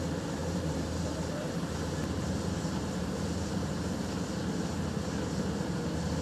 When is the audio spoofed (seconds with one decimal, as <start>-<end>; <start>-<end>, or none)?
0.4-4.1